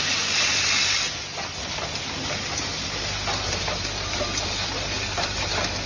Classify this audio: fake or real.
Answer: real